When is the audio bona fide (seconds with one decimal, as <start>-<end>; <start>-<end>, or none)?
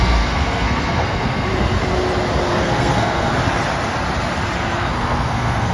1.5-2.5; 3.3-4.7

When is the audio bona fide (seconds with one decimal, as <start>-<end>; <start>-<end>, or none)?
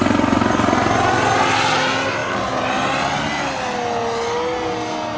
0.0-5.2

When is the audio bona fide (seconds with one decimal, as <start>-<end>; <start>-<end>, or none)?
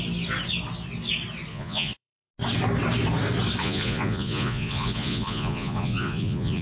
0.0-1.5; 2.3-3.6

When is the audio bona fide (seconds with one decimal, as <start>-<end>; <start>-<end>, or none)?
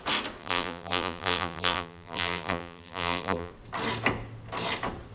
0.0-0.4; 3.5-5.1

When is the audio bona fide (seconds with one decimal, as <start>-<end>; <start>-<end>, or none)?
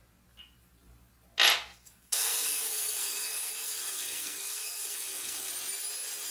0.0-1.7; 5.5-6.3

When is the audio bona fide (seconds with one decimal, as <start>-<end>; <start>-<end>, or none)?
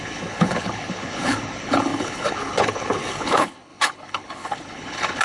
none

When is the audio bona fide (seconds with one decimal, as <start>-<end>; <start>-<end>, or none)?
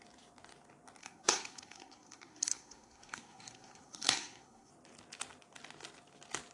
0.0-1.0; 4.7-6.5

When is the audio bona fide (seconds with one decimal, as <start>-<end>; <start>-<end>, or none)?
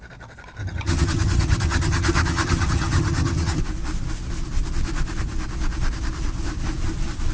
0.0-0.6; 3.6-7.3